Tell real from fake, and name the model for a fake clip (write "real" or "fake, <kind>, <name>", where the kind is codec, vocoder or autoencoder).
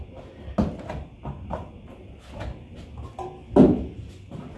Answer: real